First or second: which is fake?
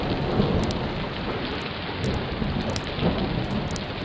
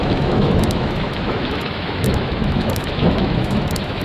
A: second